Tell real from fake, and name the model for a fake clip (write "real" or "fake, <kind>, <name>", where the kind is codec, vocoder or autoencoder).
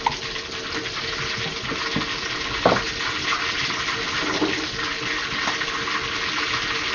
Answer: real